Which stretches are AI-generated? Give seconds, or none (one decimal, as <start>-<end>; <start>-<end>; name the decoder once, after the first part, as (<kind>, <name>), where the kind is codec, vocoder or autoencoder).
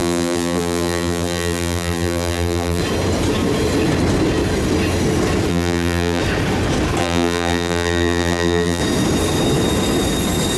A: 0.0-2.8 (vocoder, BigVGAN v2); 5.5-6.2; 7.0-8.8